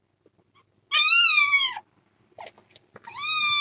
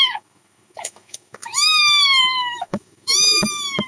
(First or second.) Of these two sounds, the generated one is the second